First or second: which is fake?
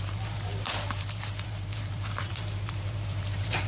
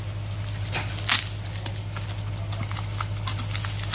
first